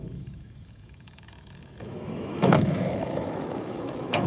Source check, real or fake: fake